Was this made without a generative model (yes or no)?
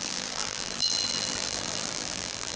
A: no